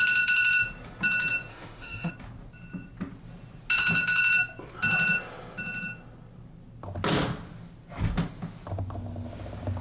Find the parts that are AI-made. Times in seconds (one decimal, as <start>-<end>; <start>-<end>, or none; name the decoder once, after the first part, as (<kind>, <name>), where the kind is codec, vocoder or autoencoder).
1.5-2.1 (autoencoder, DAC-VAE)